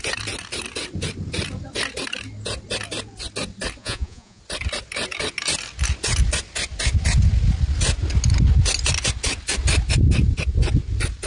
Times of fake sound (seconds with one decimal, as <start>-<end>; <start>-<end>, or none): 3.8-4.4